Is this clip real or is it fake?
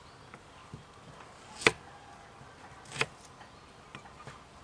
real